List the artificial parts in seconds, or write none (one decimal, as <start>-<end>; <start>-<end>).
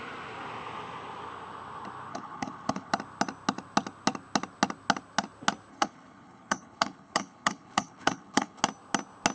2.1-2.9; 5.7-8.6